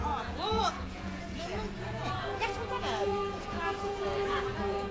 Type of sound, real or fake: fake